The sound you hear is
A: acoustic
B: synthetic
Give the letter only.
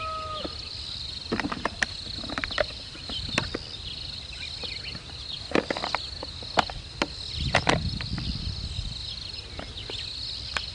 A